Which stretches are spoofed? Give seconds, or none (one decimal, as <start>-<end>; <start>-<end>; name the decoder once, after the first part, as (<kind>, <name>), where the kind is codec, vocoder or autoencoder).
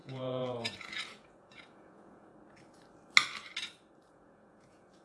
0.0-2.3 (vocoder, Vocos); 4.1-5.0